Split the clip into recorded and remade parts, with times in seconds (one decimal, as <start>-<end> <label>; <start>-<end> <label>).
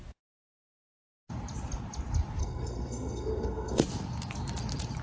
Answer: 0.0-2.4 recorded; 2.4-3.8 remade; 3.8-5.0 recorded